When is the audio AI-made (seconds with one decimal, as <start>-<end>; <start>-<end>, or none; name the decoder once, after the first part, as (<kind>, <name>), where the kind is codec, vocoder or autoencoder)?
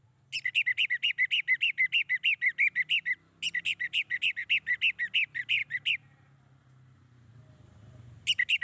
none